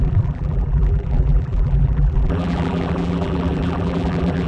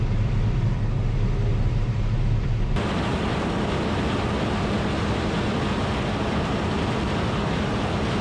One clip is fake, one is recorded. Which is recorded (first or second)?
second